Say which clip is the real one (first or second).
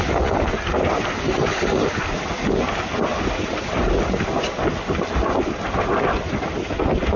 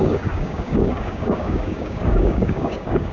first